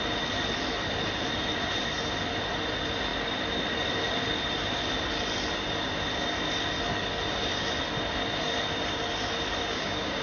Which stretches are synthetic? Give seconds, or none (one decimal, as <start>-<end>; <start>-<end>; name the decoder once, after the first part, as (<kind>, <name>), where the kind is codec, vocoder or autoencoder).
9.6-10.2 (codec, DAC)